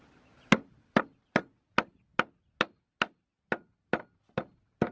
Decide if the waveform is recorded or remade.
recorded